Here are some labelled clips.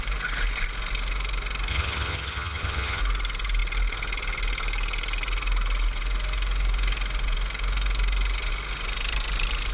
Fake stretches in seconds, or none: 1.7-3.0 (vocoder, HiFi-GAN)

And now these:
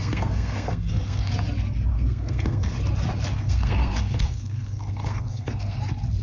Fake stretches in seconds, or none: 0.0-1.3 (codec, SNAC); 1.9-2.8; 3.3-5.8

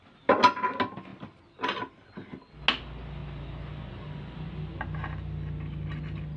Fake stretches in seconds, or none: none

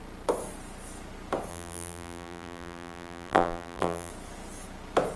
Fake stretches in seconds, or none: 1.5-4.1 (vocoder, BigVGAN v2)

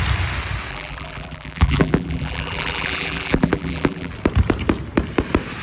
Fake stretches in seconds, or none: 0.7-4.1 (vocoder, BigVGAN v2)